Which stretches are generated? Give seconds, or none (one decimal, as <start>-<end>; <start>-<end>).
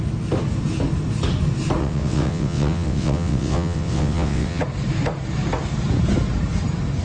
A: 1.8-4.6